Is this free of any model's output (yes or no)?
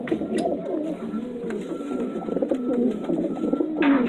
yes